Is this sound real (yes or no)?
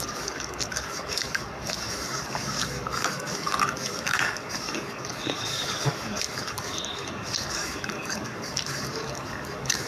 no